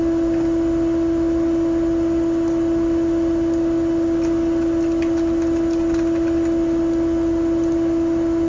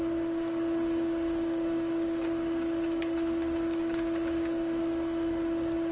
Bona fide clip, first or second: first